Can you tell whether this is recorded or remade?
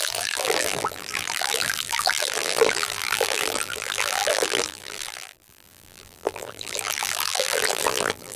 remade